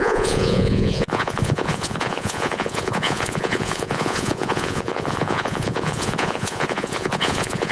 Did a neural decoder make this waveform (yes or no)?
yes